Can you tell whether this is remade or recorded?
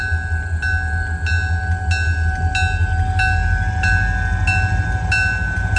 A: recorded